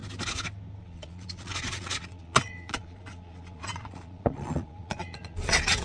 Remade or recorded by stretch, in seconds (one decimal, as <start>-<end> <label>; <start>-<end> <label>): 0.0-0.8 recorded; 0.8-5.8 remade